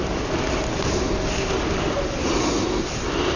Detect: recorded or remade recorded